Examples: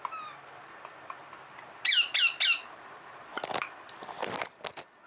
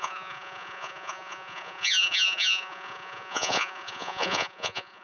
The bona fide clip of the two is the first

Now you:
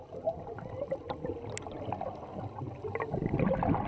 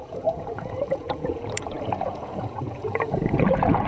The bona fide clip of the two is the first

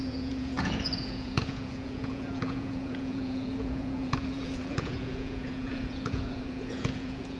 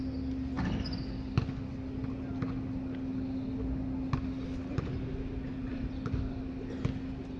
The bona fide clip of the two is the second